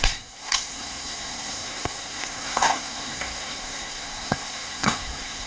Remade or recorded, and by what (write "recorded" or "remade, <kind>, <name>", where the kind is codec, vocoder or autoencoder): remade, codec, SNAC